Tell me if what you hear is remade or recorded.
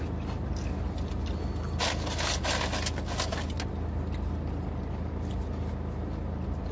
recorded